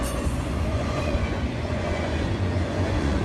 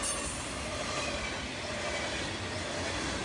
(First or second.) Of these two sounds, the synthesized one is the first